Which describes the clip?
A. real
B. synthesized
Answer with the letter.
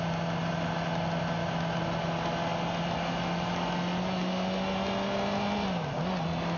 A